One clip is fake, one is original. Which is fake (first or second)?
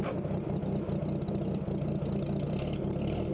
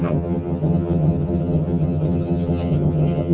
second